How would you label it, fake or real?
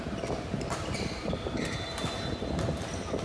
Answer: real